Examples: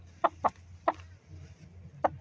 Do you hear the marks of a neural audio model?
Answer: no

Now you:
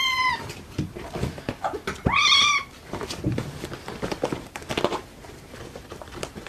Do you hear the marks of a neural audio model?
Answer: yes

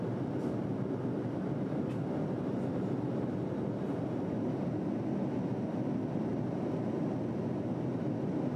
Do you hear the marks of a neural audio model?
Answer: no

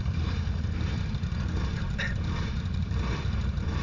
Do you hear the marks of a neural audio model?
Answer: yes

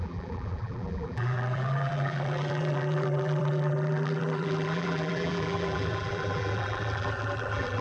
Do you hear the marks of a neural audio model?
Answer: yes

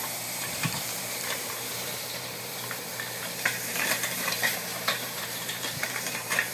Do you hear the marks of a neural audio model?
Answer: yes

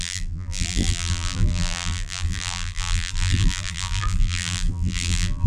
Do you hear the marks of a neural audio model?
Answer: yes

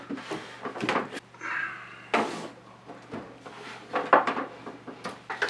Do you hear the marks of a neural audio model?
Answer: yes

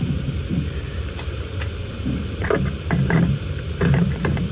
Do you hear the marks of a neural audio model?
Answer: yes